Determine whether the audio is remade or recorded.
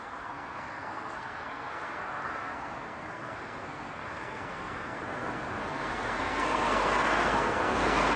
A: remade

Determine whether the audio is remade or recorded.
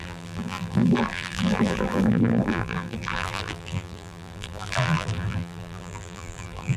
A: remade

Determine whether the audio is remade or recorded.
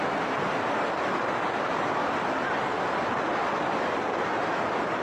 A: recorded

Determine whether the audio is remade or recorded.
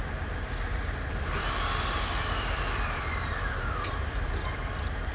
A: remade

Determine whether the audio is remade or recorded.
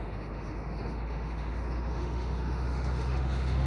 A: remade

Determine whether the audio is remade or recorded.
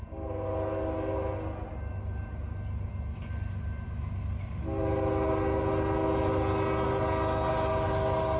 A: recorded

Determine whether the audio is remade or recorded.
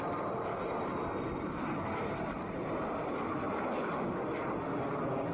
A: recorded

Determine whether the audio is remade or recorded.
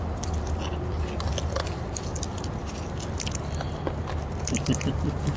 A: recorded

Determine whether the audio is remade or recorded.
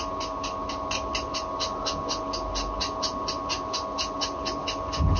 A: recorded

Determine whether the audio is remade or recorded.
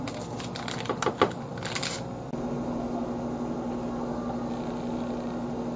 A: recorded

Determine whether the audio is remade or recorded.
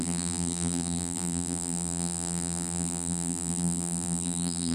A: remade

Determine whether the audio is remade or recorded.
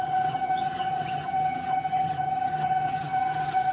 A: remade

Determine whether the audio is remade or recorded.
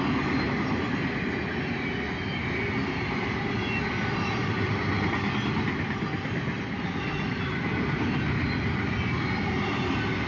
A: recorded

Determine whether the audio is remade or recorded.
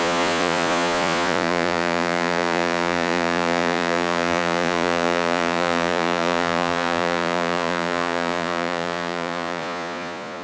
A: remade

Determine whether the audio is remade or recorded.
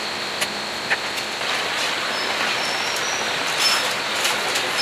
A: recorded